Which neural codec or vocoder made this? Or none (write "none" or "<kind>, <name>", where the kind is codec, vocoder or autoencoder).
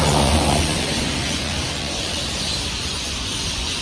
vocoder, Vocos